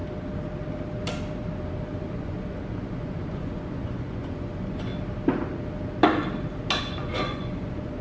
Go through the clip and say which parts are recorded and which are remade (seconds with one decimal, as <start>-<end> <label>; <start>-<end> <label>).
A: 0.0-2.1 recorded; 2.1-4.9 remade; 4.9-6.8 recorded; 6.8-8.0 remade